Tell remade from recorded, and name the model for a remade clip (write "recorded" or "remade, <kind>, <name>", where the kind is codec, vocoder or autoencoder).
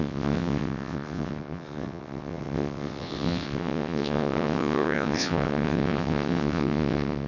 remade, vocoder, WaveNeXt